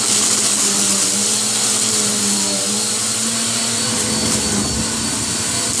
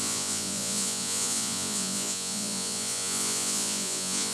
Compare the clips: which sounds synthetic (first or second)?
second